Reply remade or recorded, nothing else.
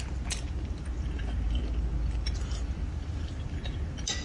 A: recorded